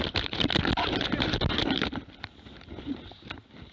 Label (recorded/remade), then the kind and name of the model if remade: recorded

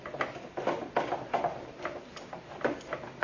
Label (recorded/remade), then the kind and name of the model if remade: recorded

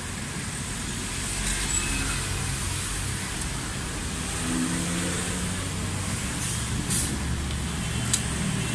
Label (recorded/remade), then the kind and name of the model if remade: recorded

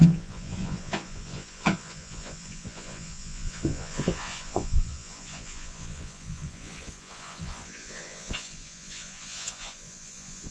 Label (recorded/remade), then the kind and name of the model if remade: remade, vocoder, Vocos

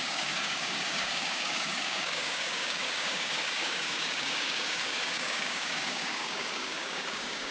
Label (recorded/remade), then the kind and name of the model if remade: remade, codec, DAC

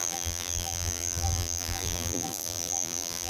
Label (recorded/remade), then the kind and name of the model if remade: remade, vocoder, BigVGAN v2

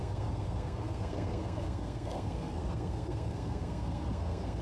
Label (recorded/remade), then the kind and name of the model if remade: remade, codec, SNAC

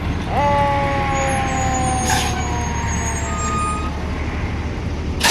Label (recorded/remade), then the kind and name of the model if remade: recorded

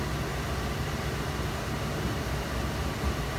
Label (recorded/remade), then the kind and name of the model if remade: recorded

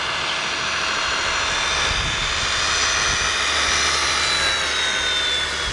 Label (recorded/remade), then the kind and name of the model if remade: recorded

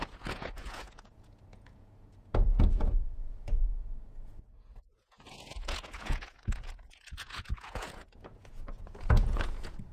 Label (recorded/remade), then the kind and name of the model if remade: remade, vocoder, Vocos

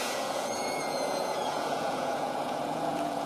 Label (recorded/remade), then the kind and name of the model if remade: remade, vocoder, Vocos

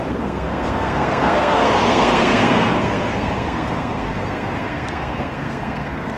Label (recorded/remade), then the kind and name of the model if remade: remade, codec, SNAC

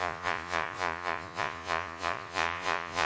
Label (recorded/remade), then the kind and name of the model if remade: remade, vocoder, Vocos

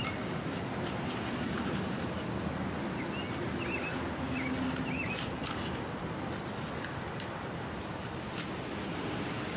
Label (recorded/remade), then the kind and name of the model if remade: recorded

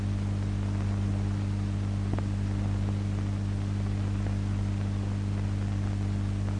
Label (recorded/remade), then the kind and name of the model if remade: recorded